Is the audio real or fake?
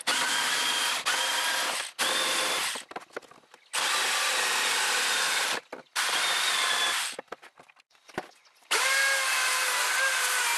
real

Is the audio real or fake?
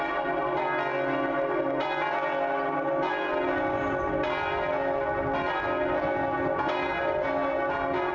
real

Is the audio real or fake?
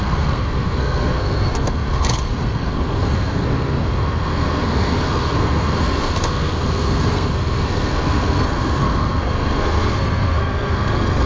fake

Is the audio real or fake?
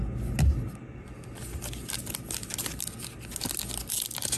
real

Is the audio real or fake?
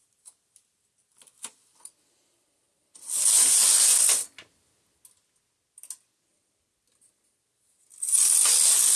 real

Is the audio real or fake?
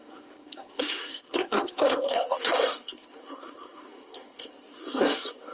fake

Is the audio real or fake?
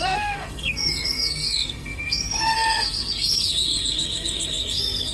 fake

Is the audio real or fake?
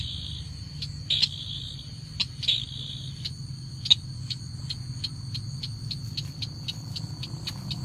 real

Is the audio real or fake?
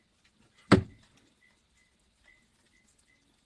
real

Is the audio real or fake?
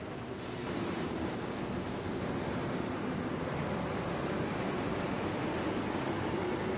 real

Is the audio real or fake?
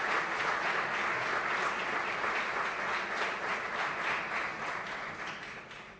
real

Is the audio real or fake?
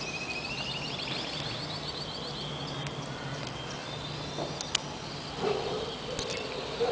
real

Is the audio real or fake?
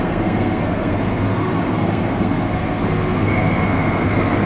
fake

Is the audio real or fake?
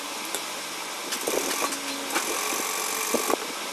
real